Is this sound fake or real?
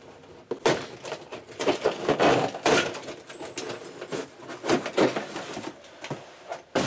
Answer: real